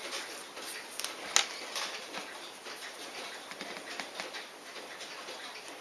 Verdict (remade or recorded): recorded